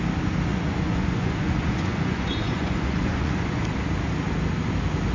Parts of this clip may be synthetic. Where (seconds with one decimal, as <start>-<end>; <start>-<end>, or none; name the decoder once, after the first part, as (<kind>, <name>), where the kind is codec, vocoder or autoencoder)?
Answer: 0.5-3.6 (vocoder, Vocos)